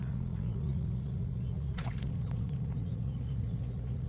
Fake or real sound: fake